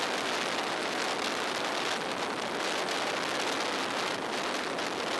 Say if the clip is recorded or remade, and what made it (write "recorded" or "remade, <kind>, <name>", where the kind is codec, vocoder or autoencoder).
recorded